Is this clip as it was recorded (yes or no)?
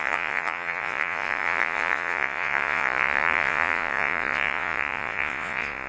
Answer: no